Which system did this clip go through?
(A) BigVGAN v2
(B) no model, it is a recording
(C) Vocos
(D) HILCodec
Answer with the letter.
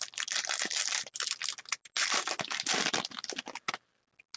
B